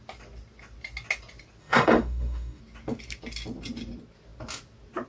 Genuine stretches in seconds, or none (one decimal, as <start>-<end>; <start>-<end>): 0.0-1.6; 2.6-5.1

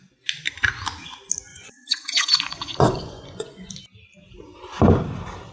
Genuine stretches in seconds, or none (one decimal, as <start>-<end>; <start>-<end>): 0.0-1.5; 3.7-5.5

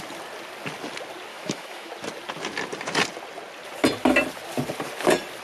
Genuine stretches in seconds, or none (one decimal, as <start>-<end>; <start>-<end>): 0.0-1.3; 1.9-5.4

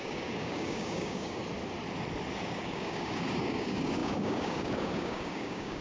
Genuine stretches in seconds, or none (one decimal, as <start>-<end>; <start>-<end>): 1.4-2.4

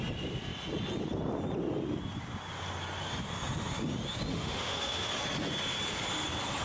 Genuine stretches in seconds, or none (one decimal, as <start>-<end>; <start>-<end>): 0.0-4.3; 5.1-6.6